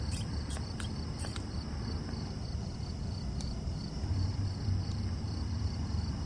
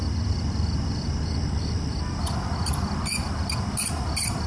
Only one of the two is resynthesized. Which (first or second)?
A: first